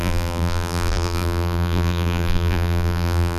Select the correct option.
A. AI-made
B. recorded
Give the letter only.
A